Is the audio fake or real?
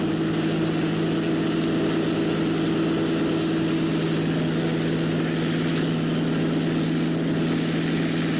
real